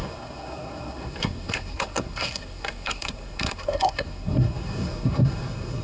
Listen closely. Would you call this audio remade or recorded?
remade